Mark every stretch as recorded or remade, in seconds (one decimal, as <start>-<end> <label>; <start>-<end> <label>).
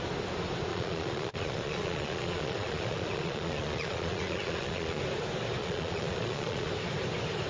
0.0-0.7 recorded; 0.7-5.0 remade; 5.0-5.6 recorded; 5.6-6.7 remade; 6.7-7.5 recorded